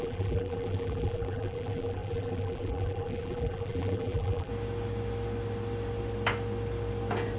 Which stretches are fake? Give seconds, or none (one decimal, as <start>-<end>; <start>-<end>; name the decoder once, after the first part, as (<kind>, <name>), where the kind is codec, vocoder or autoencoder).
0.0-4.5 (vocoder, BigVGAN v2)